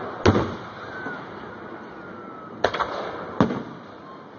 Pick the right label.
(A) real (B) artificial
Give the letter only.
A